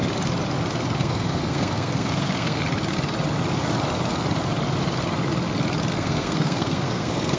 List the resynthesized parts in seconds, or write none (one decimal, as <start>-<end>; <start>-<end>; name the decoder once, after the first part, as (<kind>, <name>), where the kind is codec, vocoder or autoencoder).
1.0-2.6 (codec, SNAC); 5.9-7.4